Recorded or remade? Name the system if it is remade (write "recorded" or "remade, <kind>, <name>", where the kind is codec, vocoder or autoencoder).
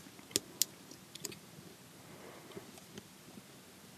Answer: recorded